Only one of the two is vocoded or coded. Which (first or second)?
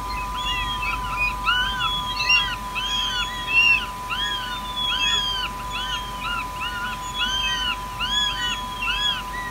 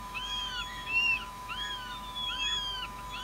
second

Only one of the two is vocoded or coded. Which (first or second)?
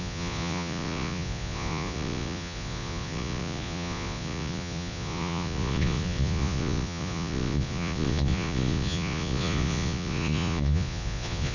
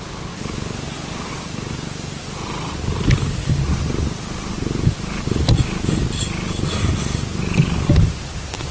first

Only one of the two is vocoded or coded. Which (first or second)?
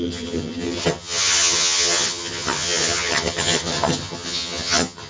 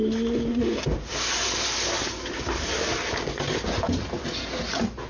first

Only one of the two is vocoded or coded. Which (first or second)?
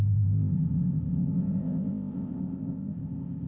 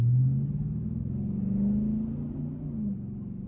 first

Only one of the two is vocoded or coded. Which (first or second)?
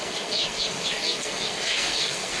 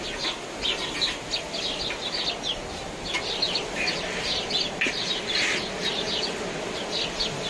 first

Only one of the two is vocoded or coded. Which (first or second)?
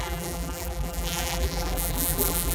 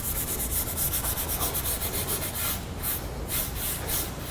first